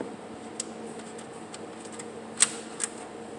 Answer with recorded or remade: recorded